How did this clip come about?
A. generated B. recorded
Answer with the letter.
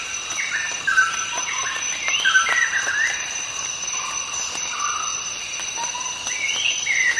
B